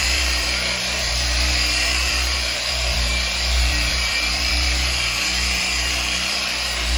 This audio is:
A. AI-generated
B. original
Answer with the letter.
A